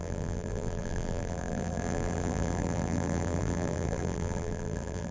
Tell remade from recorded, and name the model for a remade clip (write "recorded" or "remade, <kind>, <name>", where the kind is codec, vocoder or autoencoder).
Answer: remade, vocoder, BigVGAN v2